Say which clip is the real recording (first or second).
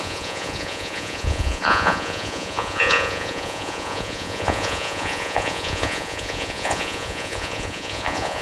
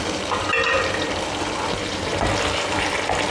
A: second